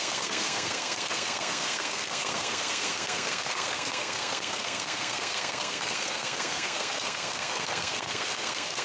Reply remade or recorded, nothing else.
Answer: remade